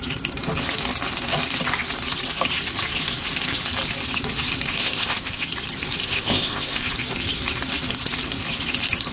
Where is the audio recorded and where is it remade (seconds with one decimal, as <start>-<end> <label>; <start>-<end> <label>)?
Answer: 0.0-4.7 recorded; 4.7-5.4 remade; 5.4-6.0 recorded; 6.0-6.9 remade; 6.9-9.1 recorded